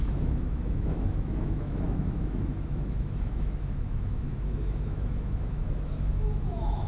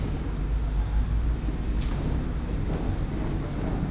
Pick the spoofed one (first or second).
first